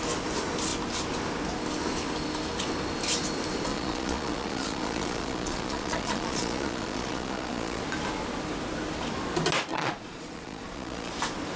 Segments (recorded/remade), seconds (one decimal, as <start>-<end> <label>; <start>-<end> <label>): 0.0-3.7 recorded; 3.7-7.8 remade; 7.8-9.7 recorded; 9.7-11.1 remade; 11.1-11.6 recorded